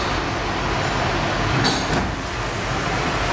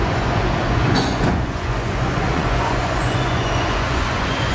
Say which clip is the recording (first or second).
first